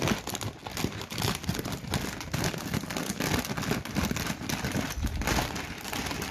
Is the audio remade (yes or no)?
no